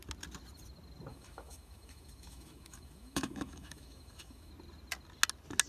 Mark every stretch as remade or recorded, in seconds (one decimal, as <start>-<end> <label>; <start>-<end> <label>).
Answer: 0.0-1.1 recorded; 1.1-4.5 remade; 4.5-5.7 recorded